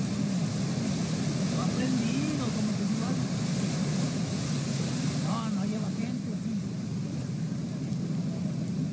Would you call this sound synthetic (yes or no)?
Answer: no